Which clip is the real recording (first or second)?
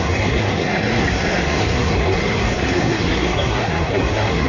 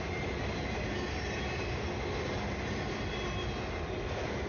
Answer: second